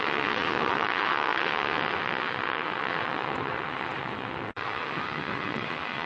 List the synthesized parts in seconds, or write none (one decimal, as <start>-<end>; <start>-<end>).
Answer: 0.0-6.1